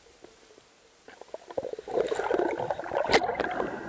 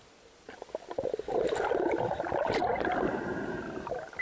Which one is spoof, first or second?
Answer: second